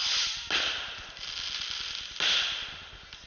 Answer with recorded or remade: recorded